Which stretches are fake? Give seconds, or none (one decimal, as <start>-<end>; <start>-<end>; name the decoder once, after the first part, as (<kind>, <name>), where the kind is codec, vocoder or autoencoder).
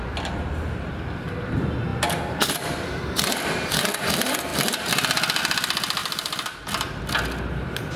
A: 1.9-3.0 (vocoder, BigVGAN v2); 6.0-6.6